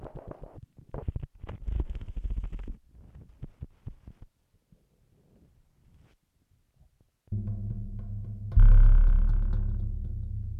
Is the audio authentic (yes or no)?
yes